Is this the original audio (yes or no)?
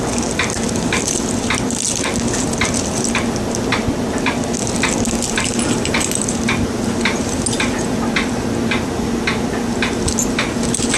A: yes